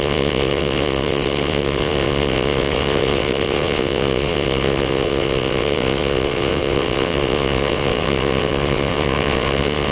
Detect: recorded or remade remade